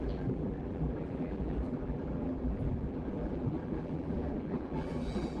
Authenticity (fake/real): fake